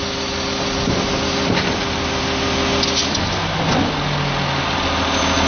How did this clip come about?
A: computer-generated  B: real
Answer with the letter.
B